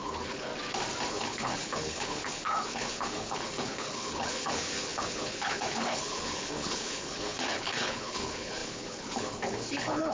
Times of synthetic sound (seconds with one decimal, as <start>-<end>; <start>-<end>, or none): 0.0-0.5; 1.1-10.1